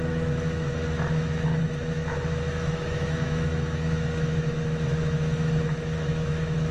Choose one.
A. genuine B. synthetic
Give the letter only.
B